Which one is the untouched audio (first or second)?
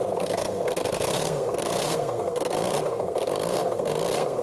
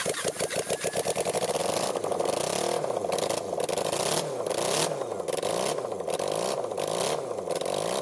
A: second